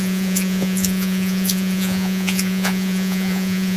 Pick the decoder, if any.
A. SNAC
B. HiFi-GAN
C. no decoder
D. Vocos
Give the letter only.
D